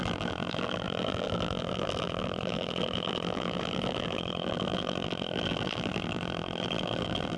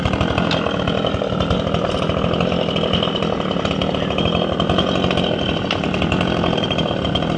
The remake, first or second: first